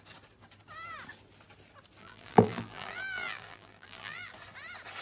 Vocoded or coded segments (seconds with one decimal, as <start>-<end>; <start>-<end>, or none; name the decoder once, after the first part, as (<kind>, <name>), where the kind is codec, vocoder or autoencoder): 2.0-4.3 (vocoder, BigVGAN v2)